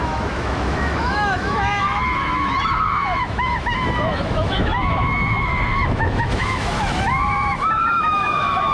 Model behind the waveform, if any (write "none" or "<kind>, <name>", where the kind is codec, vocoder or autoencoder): autoencoder, DAC-VAE